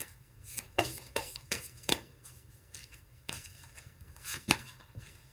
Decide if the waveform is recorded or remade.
remade